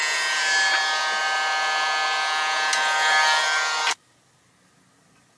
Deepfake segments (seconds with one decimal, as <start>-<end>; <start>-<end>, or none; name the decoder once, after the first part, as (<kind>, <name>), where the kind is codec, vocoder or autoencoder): none